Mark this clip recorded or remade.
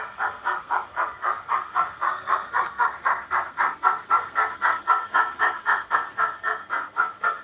remade